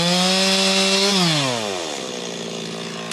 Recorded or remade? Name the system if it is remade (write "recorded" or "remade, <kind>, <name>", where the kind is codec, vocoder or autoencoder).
recorded